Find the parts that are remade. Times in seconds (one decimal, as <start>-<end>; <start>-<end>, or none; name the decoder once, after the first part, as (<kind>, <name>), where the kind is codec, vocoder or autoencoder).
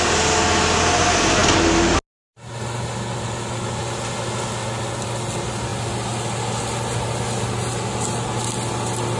none